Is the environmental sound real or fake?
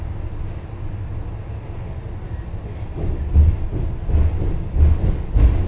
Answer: real